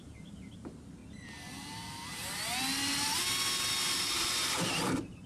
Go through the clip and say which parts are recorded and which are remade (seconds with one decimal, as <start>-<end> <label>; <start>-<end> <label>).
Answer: 0.0-1.0 remade; 1.0-3.9 recorded; 3.9-5.3 remade